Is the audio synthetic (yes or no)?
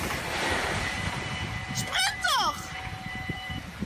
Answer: yes